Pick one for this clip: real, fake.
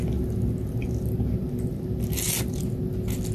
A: real